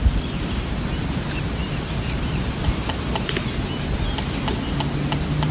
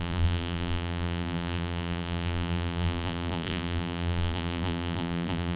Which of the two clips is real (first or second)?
first